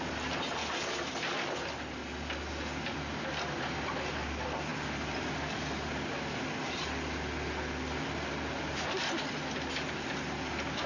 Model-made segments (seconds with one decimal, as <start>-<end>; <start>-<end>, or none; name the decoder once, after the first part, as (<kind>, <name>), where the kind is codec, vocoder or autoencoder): none